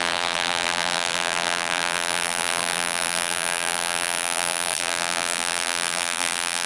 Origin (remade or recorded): remade